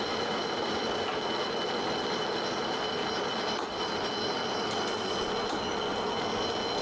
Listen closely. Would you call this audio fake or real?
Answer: real